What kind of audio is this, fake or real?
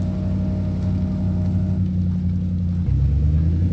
real